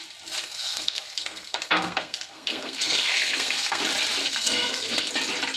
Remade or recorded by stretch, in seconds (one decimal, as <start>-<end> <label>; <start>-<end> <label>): 0.0-0.4 recorded; 0.4-3.8 remade; 3.8-4.2 recorded; 4.2-5.1 remade; 5.1-5.6 recorded